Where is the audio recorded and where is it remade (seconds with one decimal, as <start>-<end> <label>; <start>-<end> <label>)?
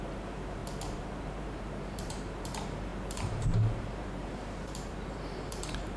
0.0-0.6 remade; 0.6-1.2 recorded; 1.2-6.0 remade